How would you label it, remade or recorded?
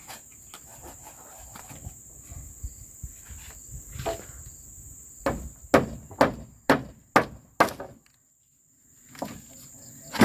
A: recorded